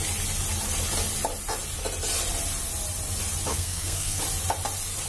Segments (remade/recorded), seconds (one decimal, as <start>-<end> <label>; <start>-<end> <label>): 0.0-3.5 recorded; 3.5-4.2 remade; 4.2-5.1 recorded